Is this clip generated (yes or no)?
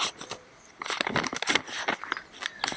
yes